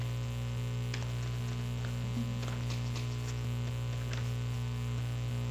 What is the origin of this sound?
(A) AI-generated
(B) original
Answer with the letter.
B